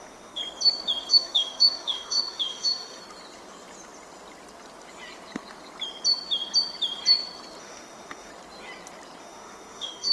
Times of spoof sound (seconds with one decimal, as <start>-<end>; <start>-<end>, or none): 0.0-0.4; 1.1-3.0; 7.6-8.3; 9.2-10.1